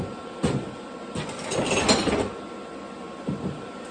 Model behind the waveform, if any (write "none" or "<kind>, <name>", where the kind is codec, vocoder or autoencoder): none